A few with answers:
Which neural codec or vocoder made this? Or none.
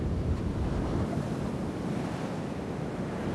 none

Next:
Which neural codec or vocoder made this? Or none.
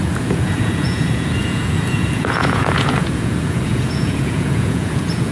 vocoder, Vocos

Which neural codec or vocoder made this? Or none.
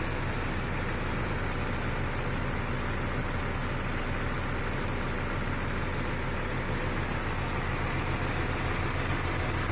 none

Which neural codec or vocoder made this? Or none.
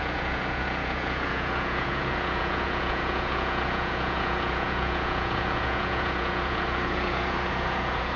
vocoder, Vocos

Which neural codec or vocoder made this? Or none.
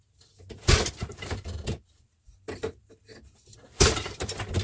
none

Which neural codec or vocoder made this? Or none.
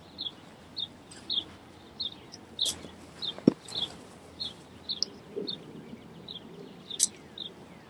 none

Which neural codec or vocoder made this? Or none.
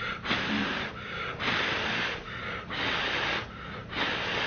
none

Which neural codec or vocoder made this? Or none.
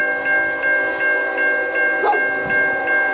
none